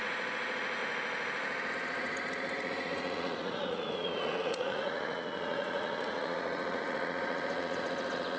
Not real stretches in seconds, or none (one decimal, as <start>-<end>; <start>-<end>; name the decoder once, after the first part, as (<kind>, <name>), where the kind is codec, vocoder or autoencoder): 0.0-0.8 (vocoder, Vocos); 1.7-8.4